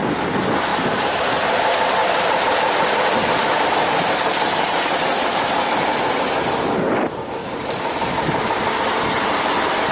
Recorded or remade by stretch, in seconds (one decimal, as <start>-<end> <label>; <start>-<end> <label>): 0.0-0.7 recorded; 0.7-1.2 remade; 1.2-2.0 recorded; 2.0-6.1 remade; 6.1-7.4 recorded; 7.4-8.7 remade; 8.7-9.9 recorded